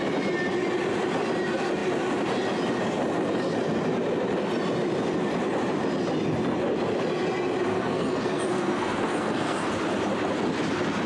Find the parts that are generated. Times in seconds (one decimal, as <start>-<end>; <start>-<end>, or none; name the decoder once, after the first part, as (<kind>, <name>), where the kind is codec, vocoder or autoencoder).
7.7-9.7 (codec, SNAC)